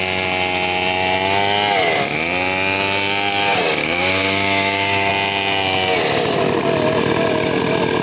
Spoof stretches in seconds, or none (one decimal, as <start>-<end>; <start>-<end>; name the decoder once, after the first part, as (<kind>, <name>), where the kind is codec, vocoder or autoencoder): 3.5-5.1 (codec, DAC)